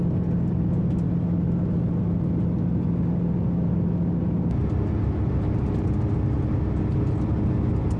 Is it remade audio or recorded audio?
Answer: recorded